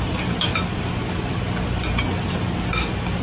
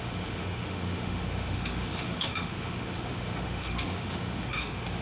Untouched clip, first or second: first